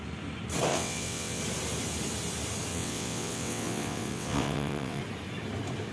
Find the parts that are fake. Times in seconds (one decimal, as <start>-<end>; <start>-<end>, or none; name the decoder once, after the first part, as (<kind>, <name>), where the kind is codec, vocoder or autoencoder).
0.7-1.4 (vocoder, WaveNeXt); 2.7-5.0

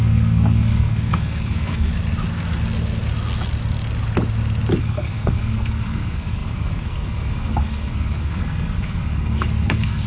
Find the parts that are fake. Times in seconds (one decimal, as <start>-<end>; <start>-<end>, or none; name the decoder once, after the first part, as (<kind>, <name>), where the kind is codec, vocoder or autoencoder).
0.0-1.9 (codec, SNAC); 4.8-10.1

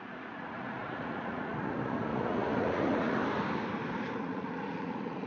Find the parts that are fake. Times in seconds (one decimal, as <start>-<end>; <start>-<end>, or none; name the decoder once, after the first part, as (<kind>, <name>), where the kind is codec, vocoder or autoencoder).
0.0-3.2 (vocoder, Vocos); 4.1-5.3

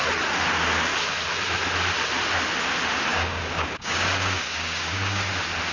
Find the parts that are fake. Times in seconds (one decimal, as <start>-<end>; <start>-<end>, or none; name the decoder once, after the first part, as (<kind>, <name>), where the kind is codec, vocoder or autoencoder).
3.1-5.3 (codec, DAC)

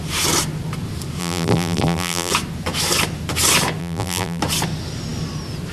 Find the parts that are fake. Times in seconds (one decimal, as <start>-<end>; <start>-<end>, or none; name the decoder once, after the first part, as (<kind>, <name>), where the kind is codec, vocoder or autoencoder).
1.2-2.3 (vocoder, BigVGAN v2); 3.8-4.4

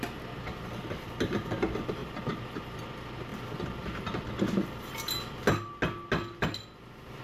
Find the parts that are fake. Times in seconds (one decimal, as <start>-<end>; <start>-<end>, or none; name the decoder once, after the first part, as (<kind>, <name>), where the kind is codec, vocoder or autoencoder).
2.0-2.6 (vocoder, BigVGAN v2)